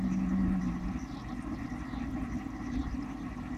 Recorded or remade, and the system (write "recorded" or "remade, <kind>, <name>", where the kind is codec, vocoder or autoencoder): recorded